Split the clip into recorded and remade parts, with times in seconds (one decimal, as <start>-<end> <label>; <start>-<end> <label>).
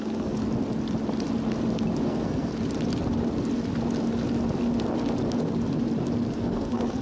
0.0-0.4 remade; 0.4-2.1 recorded; 2.1-2.5 remade; 2.5-6.3 recorded; 6.3-7.0 remade